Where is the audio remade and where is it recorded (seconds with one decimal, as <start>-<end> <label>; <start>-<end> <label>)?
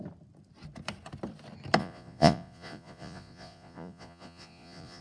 0.0-1.8 recorded; 1.8-5.0 remade